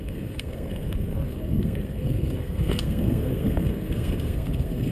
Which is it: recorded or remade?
remade